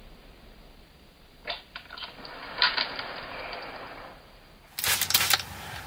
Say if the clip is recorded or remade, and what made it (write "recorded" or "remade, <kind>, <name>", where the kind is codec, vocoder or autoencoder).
remade, vocoder, BigVGAN v2